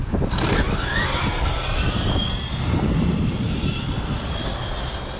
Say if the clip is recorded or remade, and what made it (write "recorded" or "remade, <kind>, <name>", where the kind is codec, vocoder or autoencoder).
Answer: remade, vocoder, BigVGAN v2